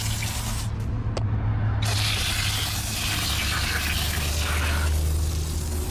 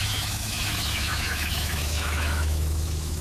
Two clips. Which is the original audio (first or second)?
first